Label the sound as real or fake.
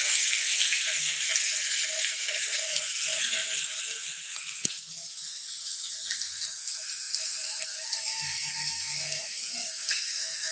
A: fake